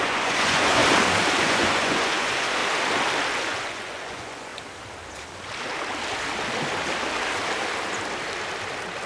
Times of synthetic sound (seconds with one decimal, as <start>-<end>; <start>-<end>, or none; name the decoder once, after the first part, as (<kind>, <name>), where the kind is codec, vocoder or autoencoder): 0.0-0.8 (vocoder, Vocos); 1.4-2.6; 3.3-4.5